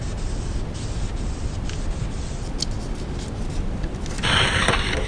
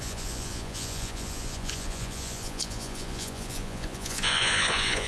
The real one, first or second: first